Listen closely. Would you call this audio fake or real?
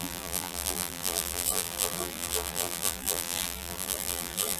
fake